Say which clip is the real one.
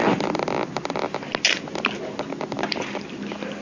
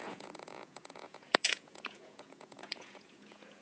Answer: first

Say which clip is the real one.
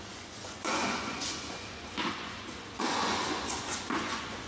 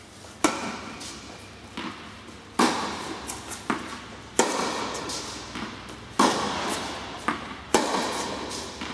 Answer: second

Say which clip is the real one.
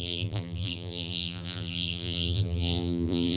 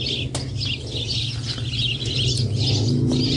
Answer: second